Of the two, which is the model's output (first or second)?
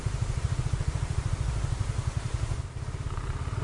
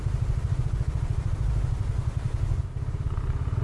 first